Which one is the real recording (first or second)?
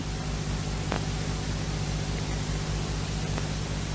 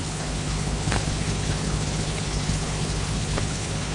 first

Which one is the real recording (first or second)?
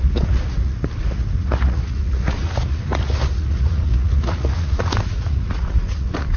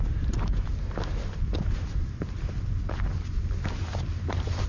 second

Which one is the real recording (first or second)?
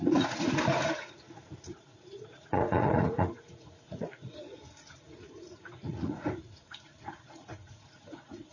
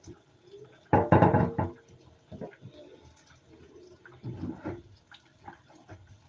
second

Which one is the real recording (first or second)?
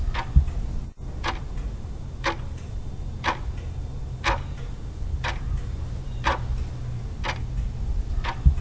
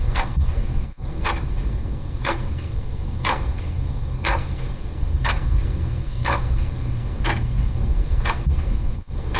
first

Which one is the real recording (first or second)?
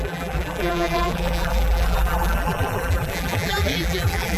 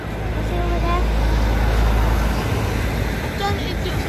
second